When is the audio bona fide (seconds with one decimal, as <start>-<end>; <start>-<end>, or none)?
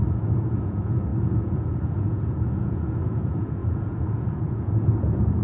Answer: none